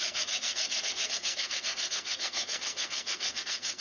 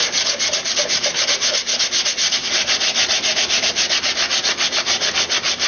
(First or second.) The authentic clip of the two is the second